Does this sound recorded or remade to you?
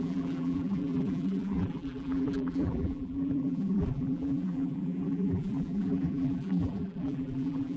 remade